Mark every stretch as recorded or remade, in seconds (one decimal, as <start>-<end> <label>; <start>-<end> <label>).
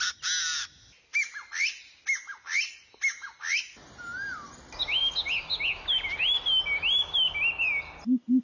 0.0-8.4 recorded